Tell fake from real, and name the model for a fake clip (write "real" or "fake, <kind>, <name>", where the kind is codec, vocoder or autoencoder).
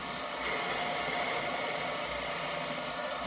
real